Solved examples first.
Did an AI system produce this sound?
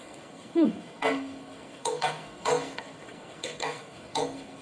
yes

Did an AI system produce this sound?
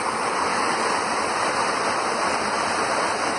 no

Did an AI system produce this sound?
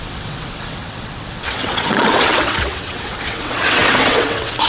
yes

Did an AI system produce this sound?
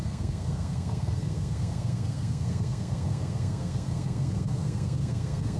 yes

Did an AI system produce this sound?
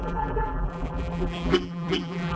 yes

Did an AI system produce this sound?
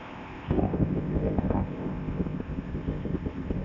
yes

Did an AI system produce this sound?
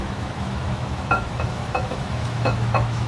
yes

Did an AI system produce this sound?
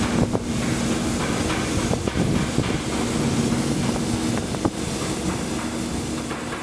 no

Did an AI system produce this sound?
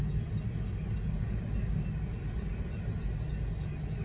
no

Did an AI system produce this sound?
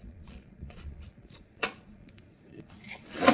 yes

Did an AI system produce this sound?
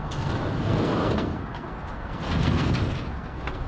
yes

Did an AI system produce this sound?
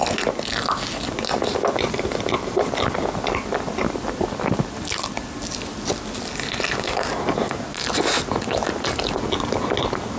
no